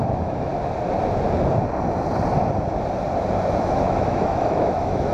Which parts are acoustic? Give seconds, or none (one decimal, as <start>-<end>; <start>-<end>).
0.5-3.6